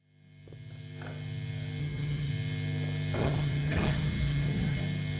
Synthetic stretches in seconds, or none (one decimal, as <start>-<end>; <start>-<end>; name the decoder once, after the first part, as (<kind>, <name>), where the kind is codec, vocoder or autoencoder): 1.8-2.3 (vocoder, HiFi-GAN); 3.2-4.8